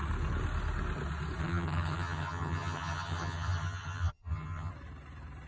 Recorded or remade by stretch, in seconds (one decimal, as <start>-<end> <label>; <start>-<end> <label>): 0.0-1.4 recorded; 1.4-4.7 remade; 4.7-5.5 recorded